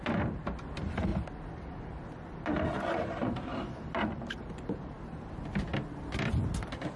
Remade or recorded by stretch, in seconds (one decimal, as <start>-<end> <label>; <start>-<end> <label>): 0.0-1.1 recorded; 1.1-5.3 remade; 5.3-5.7 recorded; 5.7-6.3 remade; 6.3-7.0 recorded